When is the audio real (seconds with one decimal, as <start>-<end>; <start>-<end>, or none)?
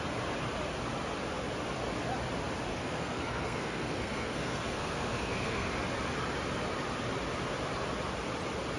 0.0-2.7; 5.7-8.8